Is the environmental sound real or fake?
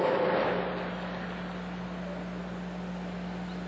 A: real